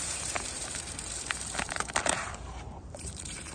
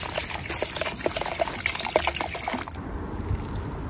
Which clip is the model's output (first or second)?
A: first